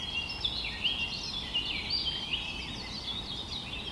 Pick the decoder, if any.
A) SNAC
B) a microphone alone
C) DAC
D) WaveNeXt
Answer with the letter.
B